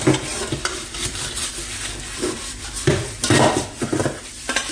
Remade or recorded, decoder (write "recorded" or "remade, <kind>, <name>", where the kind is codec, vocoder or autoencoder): remade, vocoder, BigVGAN v2